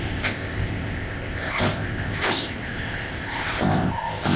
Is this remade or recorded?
remade